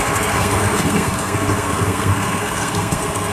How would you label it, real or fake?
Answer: fake